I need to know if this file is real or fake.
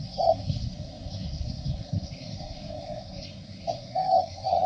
fake